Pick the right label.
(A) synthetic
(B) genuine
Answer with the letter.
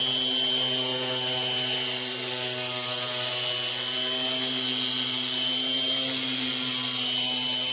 B